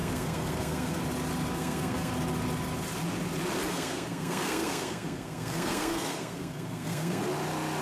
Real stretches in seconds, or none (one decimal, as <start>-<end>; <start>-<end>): 1.0-1.5; 2.1-3.7; 7.2-7.8